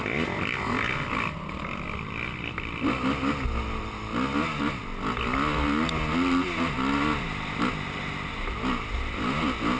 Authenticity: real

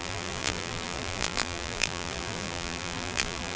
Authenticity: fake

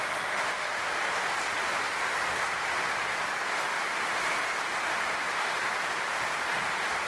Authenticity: real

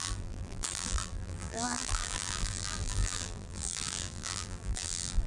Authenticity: fake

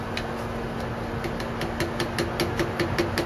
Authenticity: real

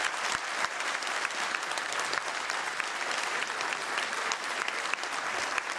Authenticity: fake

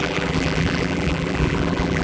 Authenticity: fake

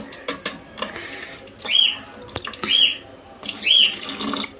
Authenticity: real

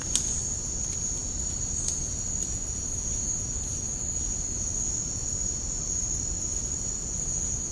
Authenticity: real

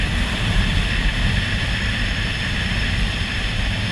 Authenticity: fake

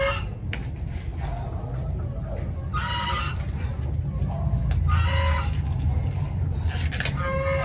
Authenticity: real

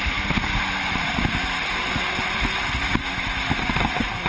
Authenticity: real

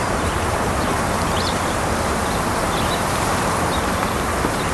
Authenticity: fake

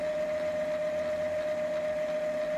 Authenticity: real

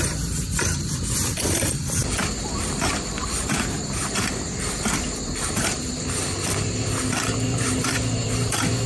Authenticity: fake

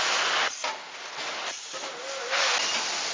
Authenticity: real